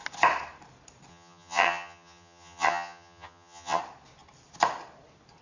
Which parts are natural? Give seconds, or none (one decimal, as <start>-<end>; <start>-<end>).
0.0-1.1; 3.8-5.4